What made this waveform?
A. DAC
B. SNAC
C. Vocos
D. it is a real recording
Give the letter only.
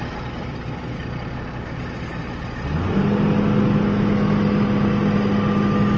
D